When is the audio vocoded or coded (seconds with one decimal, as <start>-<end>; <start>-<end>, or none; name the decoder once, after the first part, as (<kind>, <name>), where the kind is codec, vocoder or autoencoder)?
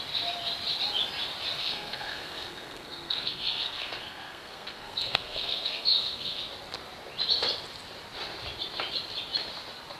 1.6-6.4 (codec, SNAC)